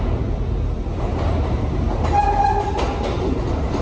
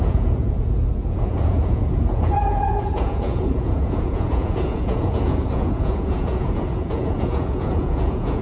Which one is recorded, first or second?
first